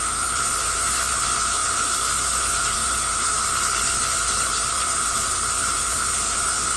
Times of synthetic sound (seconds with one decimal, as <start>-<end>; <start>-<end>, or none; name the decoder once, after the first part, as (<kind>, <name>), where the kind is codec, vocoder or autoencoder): 0.0-6.8 (codec, HILCodec)